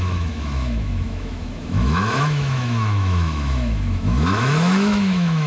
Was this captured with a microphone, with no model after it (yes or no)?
no